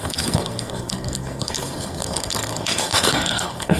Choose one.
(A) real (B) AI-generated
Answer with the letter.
B